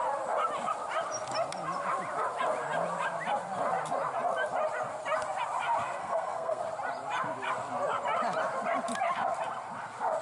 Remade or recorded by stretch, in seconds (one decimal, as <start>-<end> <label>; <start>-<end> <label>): 0.0-6.0 recorded; 6.0-6.6 remade; 6.6-10.2 recorded